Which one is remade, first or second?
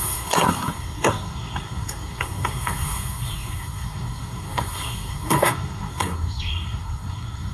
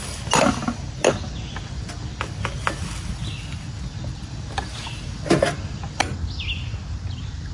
first